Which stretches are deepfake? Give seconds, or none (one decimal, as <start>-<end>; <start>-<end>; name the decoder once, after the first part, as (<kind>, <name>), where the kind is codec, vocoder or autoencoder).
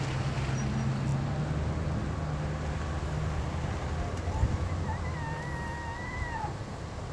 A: none